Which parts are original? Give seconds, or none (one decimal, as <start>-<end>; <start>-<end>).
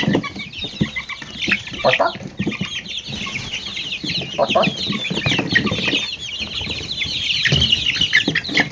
0.0-8.7